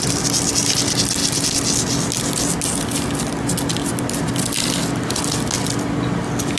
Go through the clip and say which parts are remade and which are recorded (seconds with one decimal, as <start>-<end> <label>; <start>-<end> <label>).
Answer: 0.0-6.6 recorded